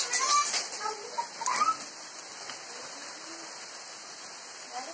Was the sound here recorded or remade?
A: recorded